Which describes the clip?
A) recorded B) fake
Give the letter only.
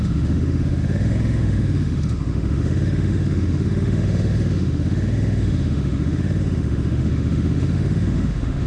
B